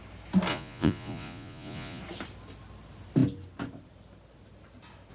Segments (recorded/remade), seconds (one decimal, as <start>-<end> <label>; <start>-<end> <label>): 0.0-0.5 recorded; 0.5-2.0 remade; 2.0-5.1 recorded